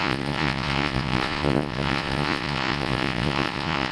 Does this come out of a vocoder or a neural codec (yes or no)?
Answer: yes